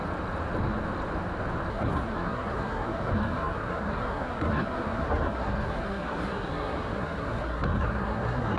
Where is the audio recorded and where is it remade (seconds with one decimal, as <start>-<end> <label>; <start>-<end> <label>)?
0.0-1.7 recorded; 1.7-8.6 remade